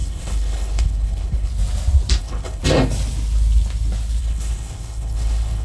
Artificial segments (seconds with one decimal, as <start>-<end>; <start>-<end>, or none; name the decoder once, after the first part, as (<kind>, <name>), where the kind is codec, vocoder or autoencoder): 0.0-1.5 (codec, HILCodec); 2.2-2.6; 4.2-5.6